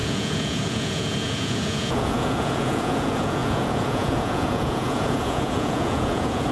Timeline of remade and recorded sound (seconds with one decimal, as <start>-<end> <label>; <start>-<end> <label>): 0.0-6.5 remade